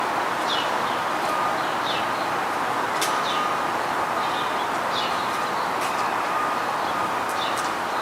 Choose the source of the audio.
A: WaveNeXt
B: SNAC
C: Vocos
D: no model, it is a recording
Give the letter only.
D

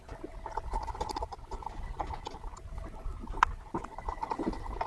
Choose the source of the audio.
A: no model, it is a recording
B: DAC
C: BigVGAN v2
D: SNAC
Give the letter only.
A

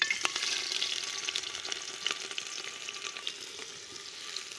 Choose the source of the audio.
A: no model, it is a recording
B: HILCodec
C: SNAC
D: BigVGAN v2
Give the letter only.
A